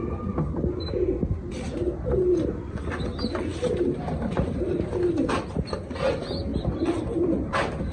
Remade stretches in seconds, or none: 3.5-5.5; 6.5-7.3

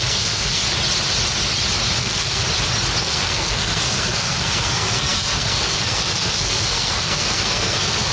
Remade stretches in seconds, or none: 0.0-0.6; 2.0-2.4; 3.0-8.1

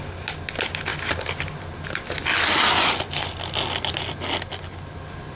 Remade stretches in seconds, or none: none

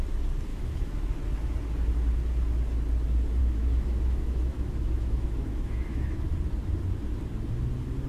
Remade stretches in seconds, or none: 0.5-1.0; 3.4-6.3